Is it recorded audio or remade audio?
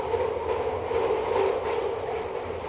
recorded